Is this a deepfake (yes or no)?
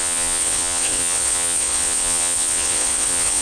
yes